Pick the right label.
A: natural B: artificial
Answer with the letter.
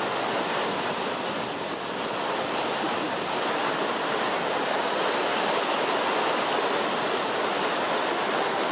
A